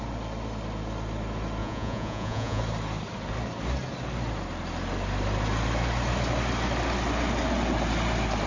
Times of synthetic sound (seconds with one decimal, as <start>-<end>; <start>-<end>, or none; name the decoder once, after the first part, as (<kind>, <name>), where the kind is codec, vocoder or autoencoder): 1.6-2.6 (vocoder, Vocos)